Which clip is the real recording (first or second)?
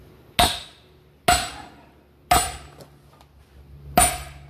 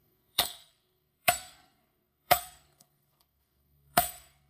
first